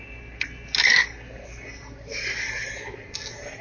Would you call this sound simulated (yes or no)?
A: no